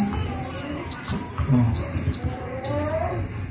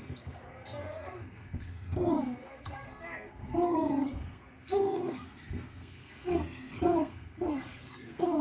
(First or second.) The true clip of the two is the first